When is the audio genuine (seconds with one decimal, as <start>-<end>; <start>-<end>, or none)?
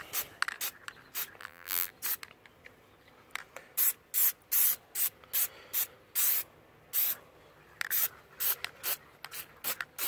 0.0-1.4; 1.9-10.1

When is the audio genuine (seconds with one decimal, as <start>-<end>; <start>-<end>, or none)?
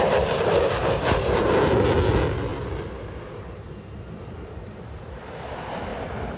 2.5-3.3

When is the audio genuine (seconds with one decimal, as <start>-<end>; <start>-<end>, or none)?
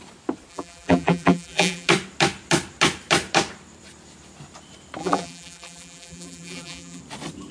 0.0-0.5; 1.9-5.0; 7.0-7.5